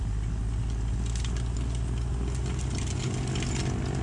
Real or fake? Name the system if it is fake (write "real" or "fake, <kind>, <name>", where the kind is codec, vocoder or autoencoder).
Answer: real